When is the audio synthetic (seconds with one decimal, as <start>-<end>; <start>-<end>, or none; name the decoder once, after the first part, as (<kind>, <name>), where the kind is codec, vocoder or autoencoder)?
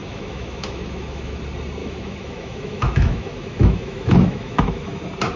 0.0-1.4 (autoencoder, DAC-VAE); 1.8-5.0